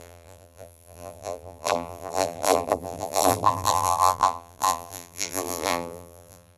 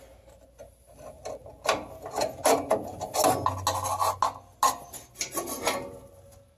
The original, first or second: second